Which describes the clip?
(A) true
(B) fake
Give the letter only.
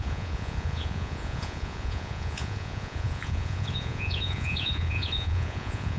B